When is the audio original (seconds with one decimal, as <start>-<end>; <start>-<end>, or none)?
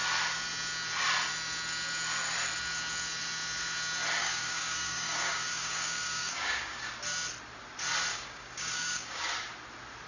0.0-4.2; 6.9-8.1; 9.3-10.1